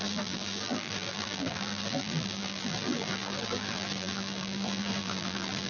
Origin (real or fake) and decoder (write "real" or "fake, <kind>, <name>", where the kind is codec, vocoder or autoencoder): fake, vocoder, BigVGAN v2